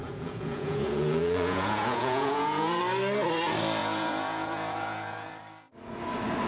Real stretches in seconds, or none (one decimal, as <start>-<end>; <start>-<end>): 2.8-3.8; 5.3-6.5